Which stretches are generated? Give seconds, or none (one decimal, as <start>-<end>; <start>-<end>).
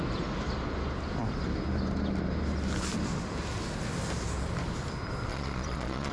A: 5.3-6.1